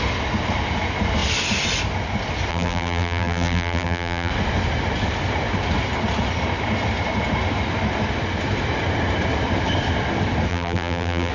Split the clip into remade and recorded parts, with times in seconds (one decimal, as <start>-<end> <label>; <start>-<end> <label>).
0.0-2.5 recorded; 2.5-4.3 remade; 4.3-10.5 recorded; 10.5-11.3 remade